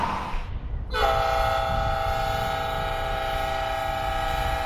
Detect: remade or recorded recorded